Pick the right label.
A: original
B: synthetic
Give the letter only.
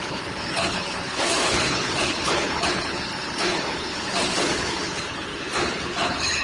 B